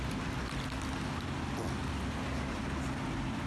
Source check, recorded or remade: recorded